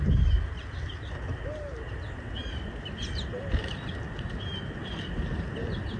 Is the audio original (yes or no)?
yes